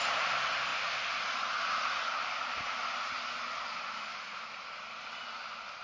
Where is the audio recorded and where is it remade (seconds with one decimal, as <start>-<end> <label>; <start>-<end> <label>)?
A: 0.0-5.8 recorded